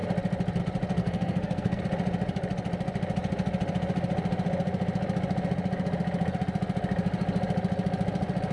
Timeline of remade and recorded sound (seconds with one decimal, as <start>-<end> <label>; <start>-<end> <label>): 0.0-1.0 recorded; 1.0-1.8 remade; 1.8-8.5 recorded